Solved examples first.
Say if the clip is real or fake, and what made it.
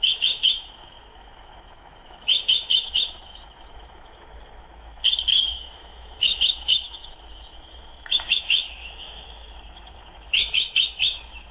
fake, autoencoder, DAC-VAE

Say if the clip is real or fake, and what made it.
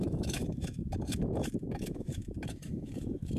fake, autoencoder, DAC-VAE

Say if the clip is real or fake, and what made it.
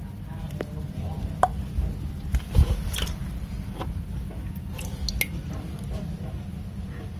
real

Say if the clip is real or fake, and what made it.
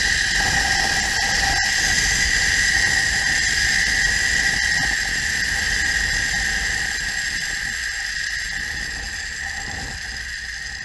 real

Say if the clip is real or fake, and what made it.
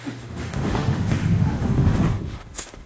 fake, autoencoder, DAC-VAE